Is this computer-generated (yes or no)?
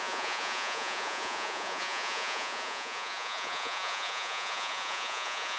yes